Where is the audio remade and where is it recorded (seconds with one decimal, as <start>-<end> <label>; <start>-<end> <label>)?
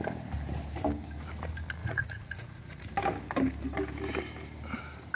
0.0-1.8 recorded; 1.8-2.9 remade; 2.9-5.2 recorded